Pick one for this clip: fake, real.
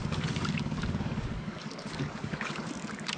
fake